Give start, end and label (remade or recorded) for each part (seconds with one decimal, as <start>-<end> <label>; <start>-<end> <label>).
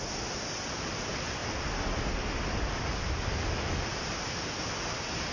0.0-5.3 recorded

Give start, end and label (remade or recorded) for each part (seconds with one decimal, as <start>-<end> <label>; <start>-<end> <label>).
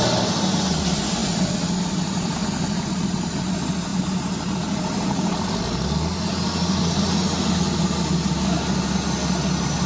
0.0-1.2 recorded; 1.2-3.5 remade; 3.5-9.9 recorded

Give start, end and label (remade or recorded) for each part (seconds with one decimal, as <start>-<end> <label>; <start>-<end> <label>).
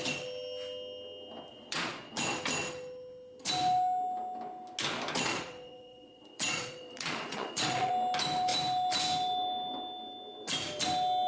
0.0-1.5 recorded; 1.5-2.2 remade; 2.2-5.3 recorded; 5.3-7.9 remade; 7.9-11.3 recorded